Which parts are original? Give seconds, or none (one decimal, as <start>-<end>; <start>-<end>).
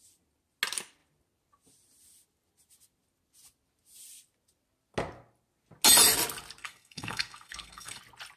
0.0-6.6; 8.0-8.4